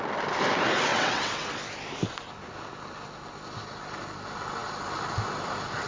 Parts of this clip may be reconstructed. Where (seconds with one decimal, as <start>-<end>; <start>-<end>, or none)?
0.9-1.5